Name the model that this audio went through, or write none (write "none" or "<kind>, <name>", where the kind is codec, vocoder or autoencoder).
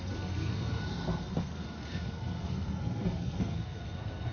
codec, SNAC